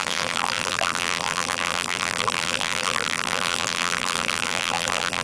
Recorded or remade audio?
remade